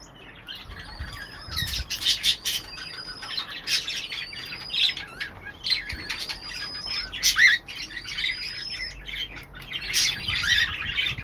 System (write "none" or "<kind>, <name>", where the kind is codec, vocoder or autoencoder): none